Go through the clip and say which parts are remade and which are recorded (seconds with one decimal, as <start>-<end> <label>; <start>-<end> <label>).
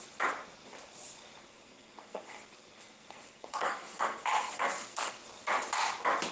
0.0-1.4 recorded; 1.4-5.2 remade; 5.2-6.3 recorded